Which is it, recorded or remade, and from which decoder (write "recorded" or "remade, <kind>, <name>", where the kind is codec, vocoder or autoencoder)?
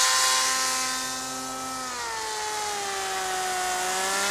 recorded